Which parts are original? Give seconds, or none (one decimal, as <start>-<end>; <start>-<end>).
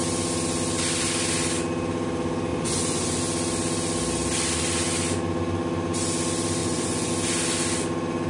0.0-2.5; 3.2-6.6; 7.1-8.3